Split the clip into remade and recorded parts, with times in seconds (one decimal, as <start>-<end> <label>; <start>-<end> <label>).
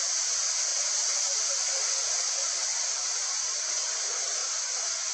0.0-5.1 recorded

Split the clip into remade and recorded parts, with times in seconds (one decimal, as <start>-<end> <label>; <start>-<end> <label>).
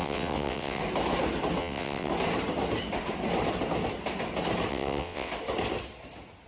0.0-0.8 remade; 0.8-1.6 recorded; 1.6-2.1 remade; 2.1-4.7 recorded; 4.7-5.3 remade; 5.3-6.5 recorded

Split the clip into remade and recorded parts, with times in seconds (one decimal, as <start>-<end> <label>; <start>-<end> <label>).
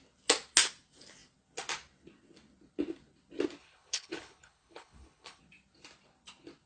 0.0-3.6 recorded; 3.6-5.4 remade; 5.4-6.7 recorded